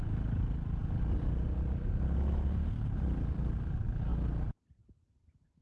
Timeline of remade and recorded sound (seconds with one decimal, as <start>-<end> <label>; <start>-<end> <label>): 0.0-0.8 recorded; 0.8-1.9 remade; 1.9-5.6 recorded